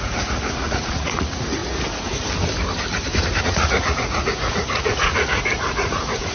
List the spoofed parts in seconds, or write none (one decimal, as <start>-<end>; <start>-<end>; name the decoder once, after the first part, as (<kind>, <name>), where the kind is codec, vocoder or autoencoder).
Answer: 0.0-1.6 (vocoder, Vocos); 3.4-6.3